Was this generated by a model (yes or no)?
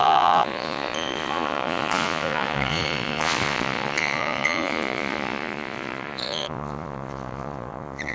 yes